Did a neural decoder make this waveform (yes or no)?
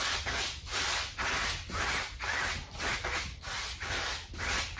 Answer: no